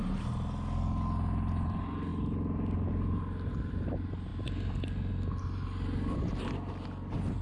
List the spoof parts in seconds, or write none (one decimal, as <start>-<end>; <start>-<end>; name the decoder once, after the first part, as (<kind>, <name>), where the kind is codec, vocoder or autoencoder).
none